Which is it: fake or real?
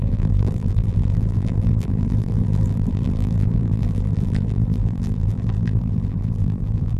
fake